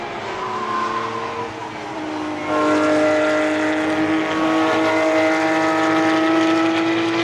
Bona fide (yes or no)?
yes